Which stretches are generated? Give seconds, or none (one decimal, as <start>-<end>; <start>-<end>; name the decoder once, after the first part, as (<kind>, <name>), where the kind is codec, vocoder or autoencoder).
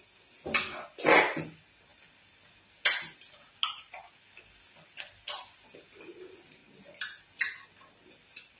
none